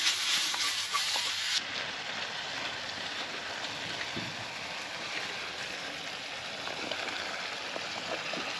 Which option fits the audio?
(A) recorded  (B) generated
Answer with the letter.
A